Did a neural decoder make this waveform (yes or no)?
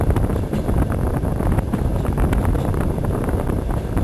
yes